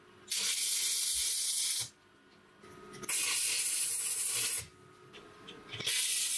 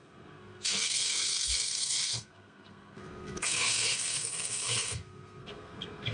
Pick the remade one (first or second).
second